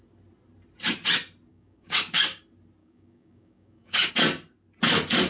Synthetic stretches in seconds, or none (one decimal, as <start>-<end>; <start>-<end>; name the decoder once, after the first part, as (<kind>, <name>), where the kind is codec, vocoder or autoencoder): 1.5-2.4 (codec, DAC); 2.8-4.1